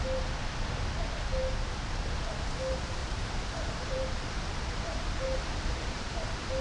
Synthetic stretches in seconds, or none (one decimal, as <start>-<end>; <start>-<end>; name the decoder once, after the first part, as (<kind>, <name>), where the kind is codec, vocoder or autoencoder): 3.0-6.6 (vocoder, BigVGAN v2)